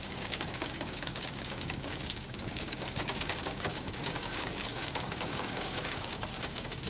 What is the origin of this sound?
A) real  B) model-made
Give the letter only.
B